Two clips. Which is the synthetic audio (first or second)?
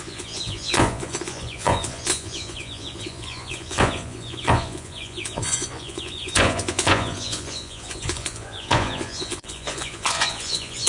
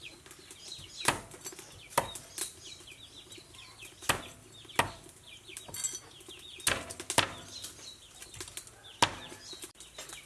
first